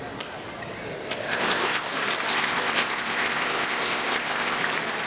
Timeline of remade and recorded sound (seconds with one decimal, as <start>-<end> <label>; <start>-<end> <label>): 0.0-0.9 recorded; 0.9-1.9 remade; 1.9-2.3 recorded; 2.3-4.6 remade; 4.6-5.1 recorded